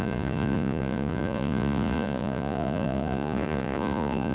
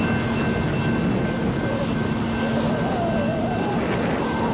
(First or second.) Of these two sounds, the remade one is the first